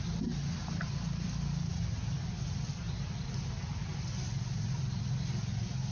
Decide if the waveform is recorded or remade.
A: recorded